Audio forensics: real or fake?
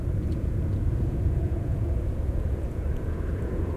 fake